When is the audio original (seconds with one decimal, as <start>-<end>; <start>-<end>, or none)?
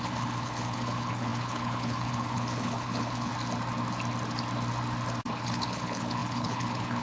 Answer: 3.3-5.3